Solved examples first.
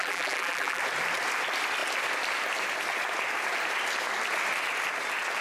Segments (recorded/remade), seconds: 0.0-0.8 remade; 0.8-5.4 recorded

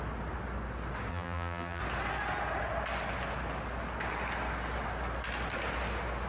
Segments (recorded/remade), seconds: 0.0-1.1 recorded; 1.1-1.8 remade; 1.8-6.3 recorded